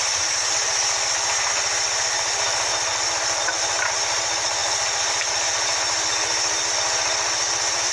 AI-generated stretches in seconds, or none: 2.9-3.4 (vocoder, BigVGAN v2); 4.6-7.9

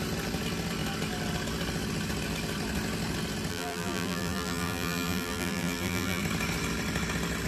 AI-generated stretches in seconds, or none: 3.5-6.2 (vocoder, BigVGAN v2)

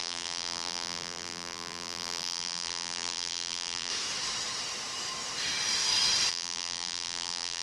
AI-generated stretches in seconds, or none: 0.0-3.9 (vocoder, BigVGAN v2); 6.3-7.6

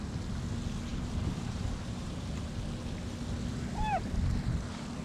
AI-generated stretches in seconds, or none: 0.9-2.5 (vocoder, BigVGAN v2); 3.5-4.0